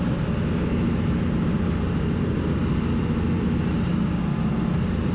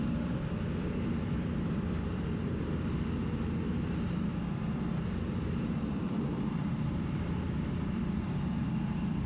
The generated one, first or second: second